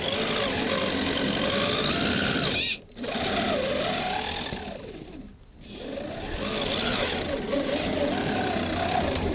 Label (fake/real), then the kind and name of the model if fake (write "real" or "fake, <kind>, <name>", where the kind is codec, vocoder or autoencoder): real